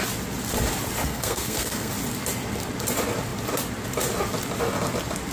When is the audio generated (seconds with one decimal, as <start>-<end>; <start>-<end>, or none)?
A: 1.0-1.9